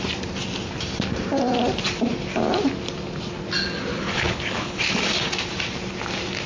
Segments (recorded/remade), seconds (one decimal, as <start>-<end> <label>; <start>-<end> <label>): 0.0-3.9 recorded; 3.9-4.8 remade; 4.8-6.5 recorded